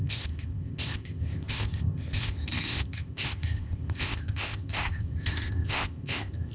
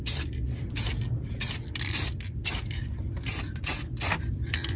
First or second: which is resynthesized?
first